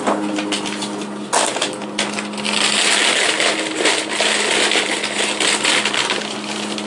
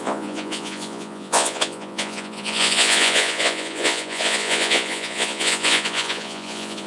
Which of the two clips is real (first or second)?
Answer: first